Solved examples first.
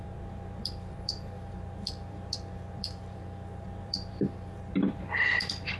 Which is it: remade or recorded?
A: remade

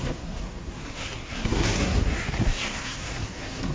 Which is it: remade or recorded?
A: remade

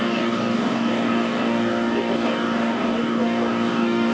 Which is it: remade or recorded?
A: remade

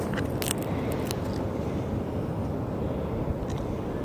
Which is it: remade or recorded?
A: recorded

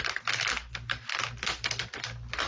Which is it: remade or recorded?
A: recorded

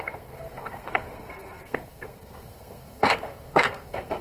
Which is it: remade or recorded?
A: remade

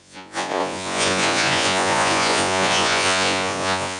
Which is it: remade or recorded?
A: remade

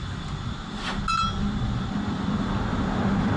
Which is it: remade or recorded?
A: recorded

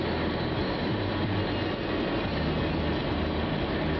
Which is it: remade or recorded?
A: recorded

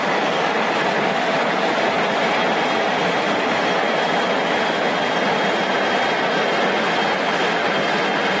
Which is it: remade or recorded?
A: recorded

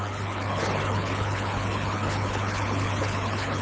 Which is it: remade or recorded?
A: remade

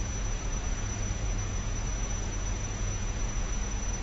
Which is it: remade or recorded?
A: remade